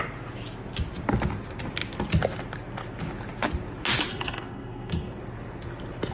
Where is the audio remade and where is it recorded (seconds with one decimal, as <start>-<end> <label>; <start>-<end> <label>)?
0.0-4.1 recorded; 4.1-5.2 remade; 5.2-6.1 recorded